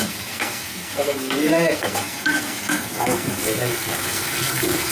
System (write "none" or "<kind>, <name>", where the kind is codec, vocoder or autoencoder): codec, SNAC